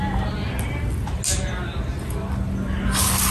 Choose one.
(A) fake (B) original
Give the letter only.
B